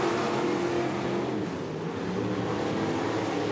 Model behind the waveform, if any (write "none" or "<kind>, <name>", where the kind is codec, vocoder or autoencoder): none